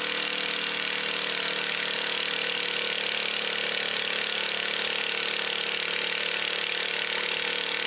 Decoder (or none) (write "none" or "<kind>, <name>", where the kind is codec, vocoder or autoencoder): none